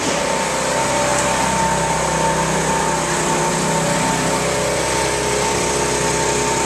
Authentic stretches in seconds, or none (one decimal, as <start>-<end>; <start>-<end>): 0.0-6.7